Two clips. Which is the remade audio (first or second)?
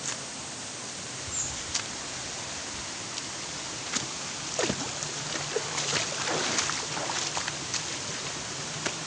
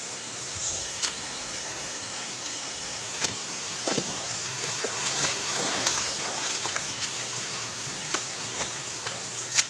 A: second